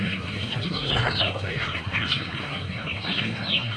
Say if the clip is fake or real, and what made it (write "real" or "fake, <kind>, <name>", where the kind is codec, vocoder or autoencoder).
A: fake, codec, SNAC